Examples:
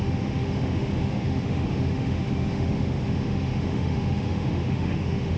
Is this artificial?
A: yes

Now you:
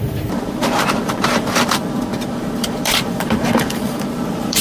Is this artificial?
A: yes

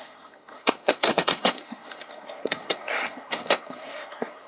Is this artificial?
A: yes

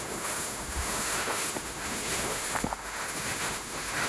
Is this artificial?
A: yes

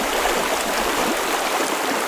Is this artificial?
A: no